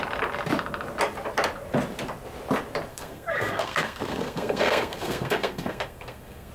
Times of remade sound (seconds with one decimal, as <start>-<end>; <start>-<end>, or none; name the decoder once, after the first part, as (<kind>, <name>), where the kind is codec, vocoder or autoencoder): 2.9-6.5 (codec, SNAC)